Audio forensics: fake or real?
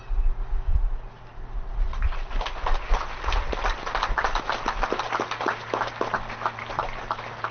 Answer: real